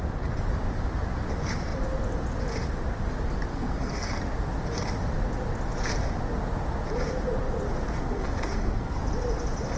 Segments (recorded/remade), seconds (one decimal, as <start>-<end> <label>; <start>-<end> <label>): 0.0-3.5 recorded; 3.5-4.2 remade; 4.2-8.0 recorded; 8.0-9.0 remade; 9.0-9.8 recorded